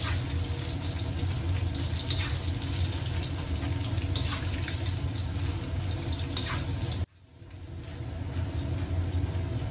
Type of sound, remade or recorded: recorded